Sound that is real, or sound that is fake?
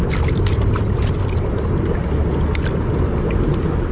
real